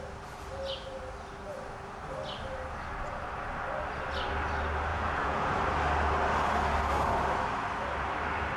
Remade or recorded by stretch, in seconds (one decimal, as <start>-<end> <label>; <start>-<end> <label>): 0.0-4.9 recorded; 4.9-5.6 remade; 5.6-8.6 recorded